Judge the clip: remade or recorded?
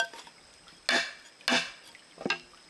recorded